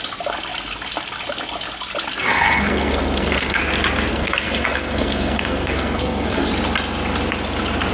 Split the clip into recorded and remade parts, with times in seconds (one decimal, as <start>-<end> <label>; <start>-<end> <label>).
0.0-2.3 recorded; 2.3-3.6 remade; 3.6-4.1 recorded; 4.1-6.5 remade; 6.5-7.9 recorded